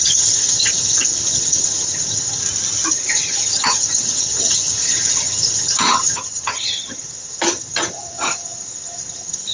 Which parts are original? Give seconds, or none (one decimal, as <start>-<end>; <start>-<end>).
2.4-2.9